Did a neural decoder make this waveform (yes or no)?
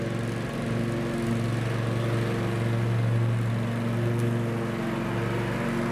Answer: no